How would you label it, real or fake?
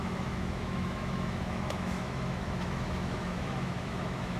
fake